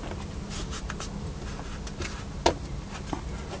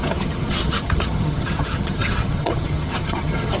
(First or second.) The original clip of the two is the first